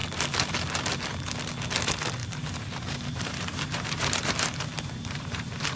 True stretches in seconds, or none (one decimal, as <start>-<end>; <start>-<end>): 0.0-2.2